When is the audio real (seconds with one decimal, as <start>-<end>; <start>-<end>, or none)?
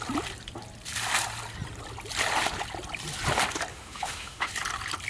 0.0-3.7; 4.5-5.1